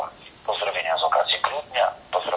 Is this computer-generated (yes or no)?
no